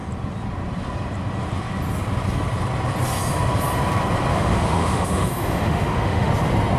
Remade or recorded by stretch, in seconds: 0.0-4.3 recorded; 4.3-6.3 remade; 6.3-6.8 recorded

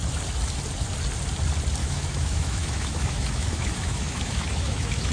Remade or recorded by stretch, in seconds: 0.0-1.8 recorded; 1.8-5.1 remade

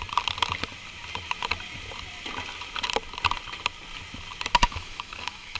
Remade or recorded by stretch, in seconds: 0.0-4.6 recorded; 4.6-5.6 remade